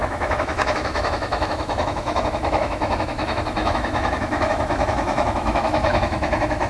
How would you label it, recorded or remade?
remade